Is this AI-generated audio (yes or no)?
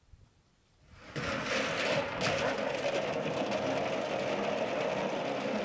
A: no